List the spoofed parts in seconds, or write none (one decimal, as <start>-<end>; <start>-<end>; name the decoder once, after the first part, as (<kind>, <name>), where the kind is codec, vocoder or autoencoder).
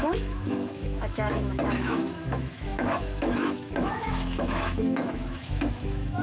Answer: 0.0-6.2 (autoencoder, DAC-VAE)